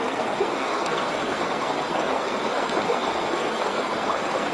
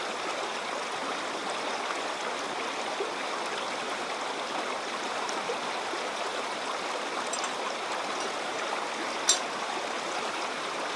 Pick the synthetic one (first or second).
first